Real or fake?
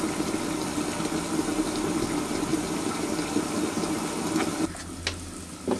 real